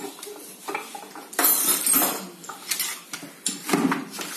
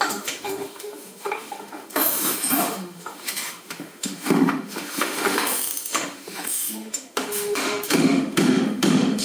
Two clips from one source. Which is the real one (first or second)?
first